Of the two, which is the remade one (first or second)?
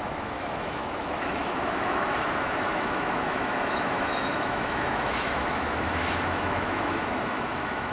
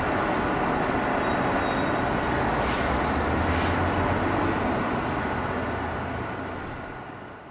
first